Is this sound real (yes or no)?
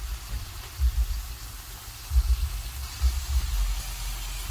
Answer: yes